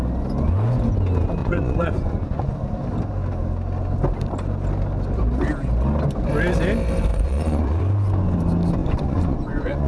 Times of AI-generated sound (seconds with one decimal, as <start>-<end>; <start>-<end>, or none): 1.4-2.5; 7.1-7.8; 8.8-9.9